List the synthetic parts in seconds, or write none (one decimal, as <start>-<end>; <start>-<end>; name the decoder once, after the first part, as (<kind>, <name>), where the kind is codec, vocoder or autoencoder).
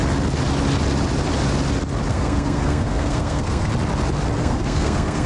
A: 2.1-3.7 (codec, SNAC); 4.4-5.3